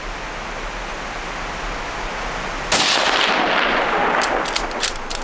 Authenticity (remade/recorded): recorded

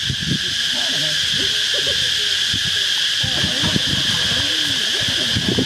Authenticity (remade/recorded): recorded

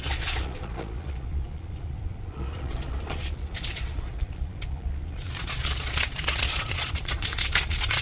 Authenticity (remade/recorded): remade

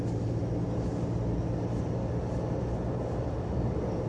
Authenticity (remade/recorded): recorded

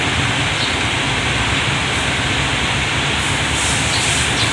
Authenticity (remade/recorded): recorded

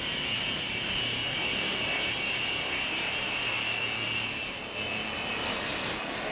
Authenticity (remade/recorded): recorded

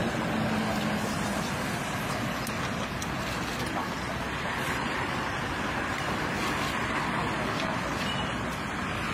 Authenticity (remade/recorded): recorded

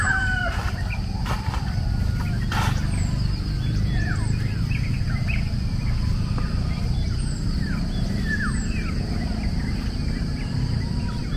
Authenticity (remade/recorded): remade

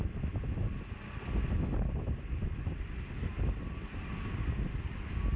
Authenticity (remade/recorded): recorded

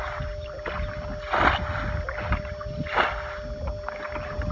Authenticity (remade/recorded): recorded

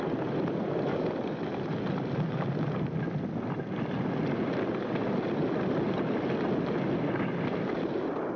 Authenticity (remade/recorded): recorded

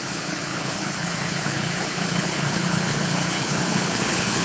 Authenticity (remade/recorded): remade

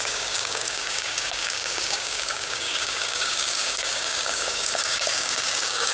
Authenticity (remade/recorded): remade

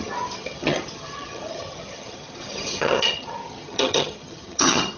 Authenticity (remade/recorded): remade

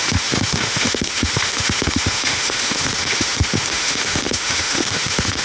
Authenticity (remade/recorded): remade